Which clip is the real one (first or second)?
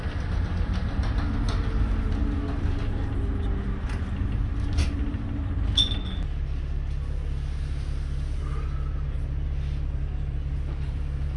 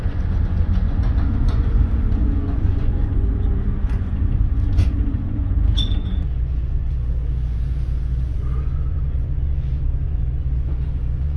first